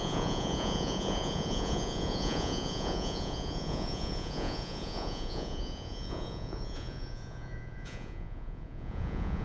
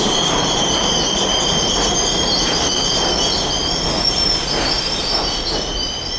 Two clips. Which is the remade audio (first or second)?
first